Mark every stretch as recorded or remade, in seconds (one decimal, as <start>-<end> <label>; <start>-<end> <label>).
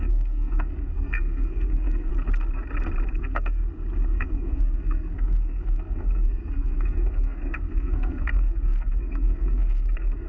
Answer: 0.0-2.1 remade; 2.1-3.1 recorded; 3.1-3.6 remade; 3.6-4.1 recorded; 4.1-10.3 remade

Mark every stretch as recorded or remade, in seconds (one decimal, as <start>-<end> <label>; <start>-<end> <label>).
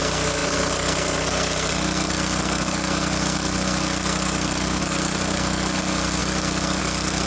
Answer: 0.0-7.3 remade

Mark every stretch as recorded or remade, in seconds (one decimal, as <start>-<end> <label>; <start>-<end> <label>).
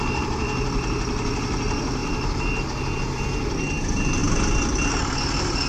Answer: 0.0-5.7 recorded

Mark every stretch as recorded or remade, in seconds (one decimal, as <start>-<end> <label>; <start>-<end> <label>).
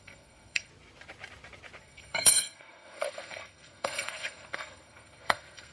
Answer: 0.0-0.7 remade; 0.7-1.8 recorded; 1.8-5.7 remade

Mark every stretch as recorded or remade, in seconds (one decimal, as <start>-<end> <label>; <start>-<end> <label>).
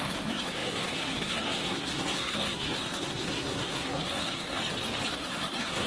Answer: 0.0-4.6 remade; 4.6-5.1 recorded; 5.1-5.9 remade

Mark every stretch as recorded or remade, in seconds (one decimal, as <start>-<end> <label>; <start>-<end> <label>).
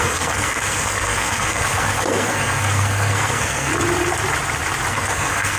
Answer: 0.0-3.7 remade; 3.7-4.9 recorded; 4.9-5.6 remade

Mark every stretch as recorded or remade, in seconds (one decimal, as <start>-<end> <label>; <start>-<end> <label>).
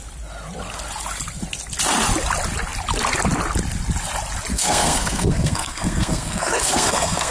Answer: 0.0-4.5 recorded; 4.5-7.3 remade